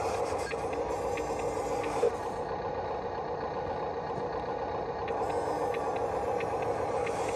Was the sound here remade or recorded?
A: recorded